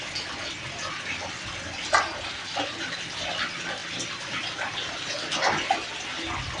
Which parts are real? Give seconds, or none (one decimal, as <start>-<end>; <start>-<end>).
0.0-6.6